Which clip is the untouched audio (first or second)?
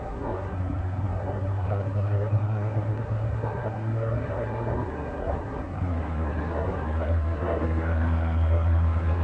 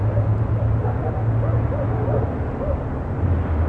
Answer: second